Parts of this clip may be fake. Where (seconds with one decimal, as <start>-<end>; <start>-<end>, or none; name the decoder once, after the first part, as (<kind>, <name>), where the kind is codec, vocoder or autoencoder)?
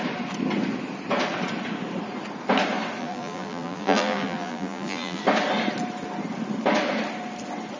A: 3.0-5.2 (vocoder, BigVGAN v2)